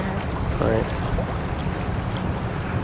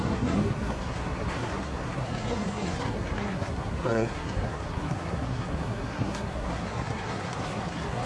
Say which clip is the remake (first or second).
second